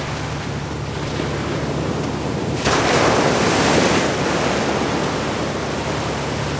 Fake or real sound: real